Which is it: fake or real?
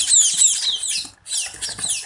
real